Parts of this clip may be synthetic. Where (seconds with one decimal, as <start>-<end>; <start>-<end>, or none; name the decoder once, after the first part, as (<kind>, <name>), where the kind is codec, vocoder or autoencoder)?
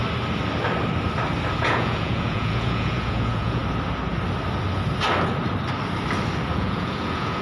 1.6-3.6 (vocoder, Vocos); 6.5-7.4